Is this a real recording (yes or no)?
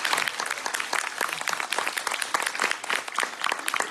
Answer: yes